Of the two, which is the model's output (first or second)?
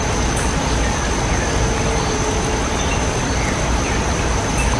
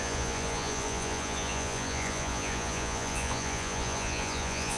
second